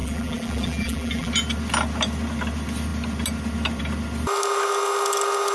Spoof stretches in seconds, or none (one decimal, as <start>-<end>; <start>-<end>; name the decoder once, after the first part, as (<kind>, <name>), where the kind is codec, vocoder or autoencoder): 0.0-1.3 (vocoder, BigVGAN v2)